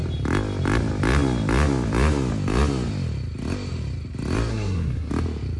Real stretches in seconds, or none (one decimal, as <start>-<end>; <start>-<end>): 0.0-4.5; 5.1-5.6